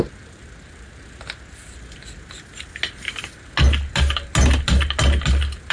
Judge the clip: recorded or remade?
recorded